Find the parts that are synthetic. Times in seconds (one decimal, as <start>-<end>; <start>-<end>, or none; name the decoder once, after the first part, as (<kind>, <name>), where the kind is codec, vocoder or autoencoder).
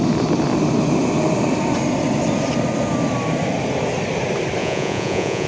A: 4.6-5.5 (vocoder, Vocos)